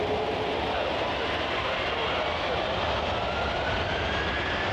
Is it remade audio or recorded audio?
recorded